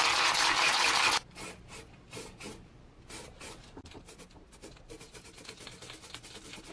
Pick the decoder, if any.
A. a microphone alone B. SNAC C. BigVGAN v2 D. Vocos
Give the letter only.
A